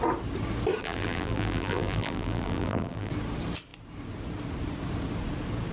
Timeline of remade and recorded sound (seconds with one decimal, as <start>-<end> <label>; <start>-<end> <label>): 0.0-0.8 recorded; 0.8-3.1 remade; 3.1-5.7 recorded